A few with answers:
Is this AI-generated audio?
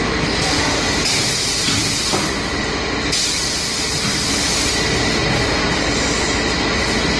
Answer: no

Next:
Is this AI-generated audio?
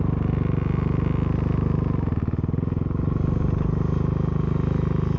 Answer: no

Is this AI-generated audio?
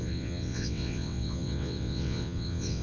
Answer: yes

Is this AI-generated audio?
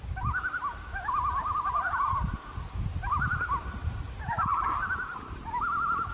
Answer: no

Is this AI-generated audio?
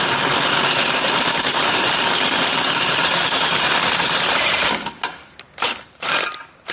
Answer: no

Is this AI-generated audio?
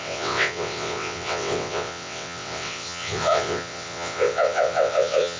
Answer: yes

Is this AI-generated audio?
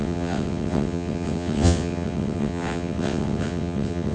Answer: yes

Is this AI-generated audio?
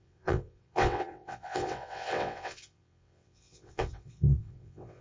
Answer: yes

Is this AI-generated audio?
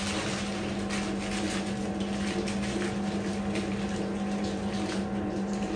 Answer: no